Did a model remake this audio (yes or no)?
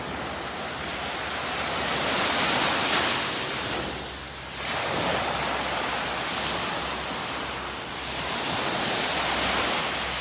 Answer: no